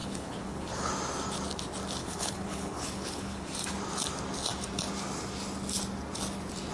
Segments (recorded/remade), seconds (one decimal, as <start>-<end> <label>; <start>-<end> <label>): 0.0-0.9 remade; 0.9-2.0 recorded; 2.0-3.5 remade; 3.5-6.7 recorded